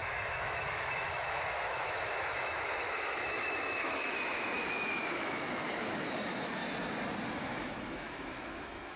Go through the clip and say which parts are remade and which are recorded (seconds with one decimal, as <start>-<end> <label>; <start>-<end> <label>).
0.0-6.6 remade; 6.6-7.4 recorded; 7.4-9.0 remade